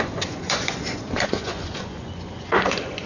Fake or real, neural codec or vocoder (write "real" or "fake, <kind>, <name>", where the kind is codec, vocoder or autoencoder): fake, vocoder, Vocos